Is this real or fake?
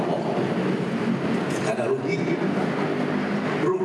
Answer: real